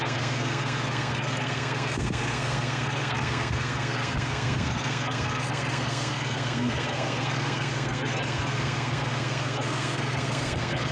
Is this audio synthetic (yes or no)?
yes